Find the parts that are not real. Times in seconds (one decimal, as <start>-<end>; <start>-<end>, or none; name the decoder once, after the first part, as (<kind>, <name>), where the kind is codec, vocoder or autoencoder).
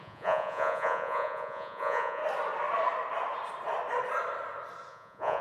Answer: 0.0-2.2 (vocoder, Vocos); 4.9-5.4